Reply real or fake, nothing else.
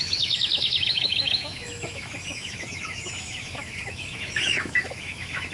fake